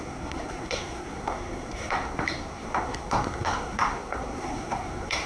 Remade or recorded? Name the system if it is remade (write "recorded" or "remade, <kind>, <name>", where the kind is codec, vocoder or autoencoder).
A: remade, codec, SNAC